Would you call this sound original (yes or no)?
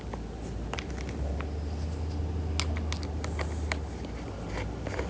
yes